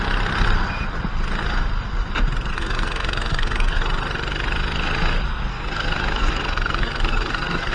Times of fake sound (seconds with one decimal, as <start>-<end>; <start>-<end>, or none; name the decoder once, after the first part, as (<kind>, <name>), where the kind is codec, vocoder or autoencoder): 2.5-3.8 (codec, SNAC); 5.5-7.7